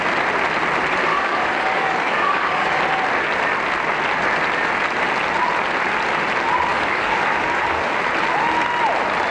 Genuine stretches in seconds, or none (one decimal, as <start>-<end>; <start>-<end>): 0.0-1.1; 2.8-6.7; 8.0-9.3